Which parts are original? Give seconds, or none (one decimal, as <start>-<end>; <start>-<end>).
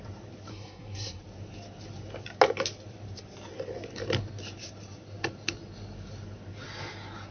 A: 0.0-0.5; 1.2-7.3